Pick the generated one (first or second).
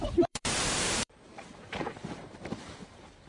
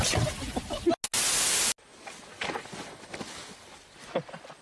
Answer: first